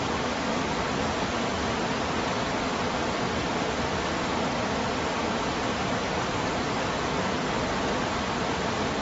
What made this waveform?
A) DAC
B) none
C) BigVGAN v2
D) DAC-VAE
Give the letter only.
B